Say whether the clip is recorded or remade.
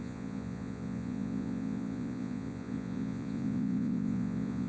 remade